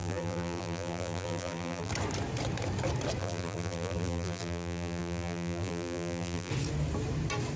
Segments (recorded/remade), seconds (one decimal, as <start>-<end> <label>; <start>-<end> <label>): 0.0-1.9 remade; 1.9-3.2 recorded; 3.2-6.5 remade; 6.5-7.6 recorded